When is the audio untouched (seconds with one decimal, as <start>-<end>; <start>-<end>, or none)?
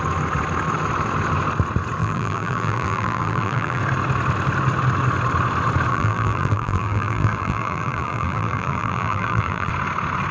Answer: 0.0-2.0; 3.8-5.9; 9.7-10.3